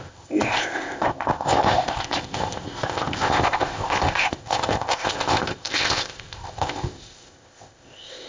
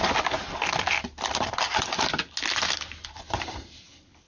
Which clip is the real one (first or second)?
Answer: second